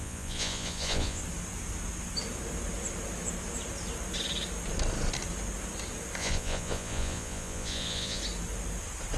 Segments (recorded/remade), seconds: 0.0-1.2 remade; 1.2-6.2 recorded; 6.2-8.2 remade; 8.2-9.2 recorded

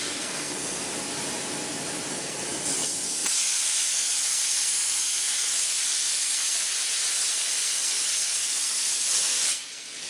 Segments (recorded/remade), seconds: 0.0-0.9 remade; 0.9-2.1 recorded; 2.1-6.7 remade; 6.7-7.3 recorded; 7.3-10.1 remade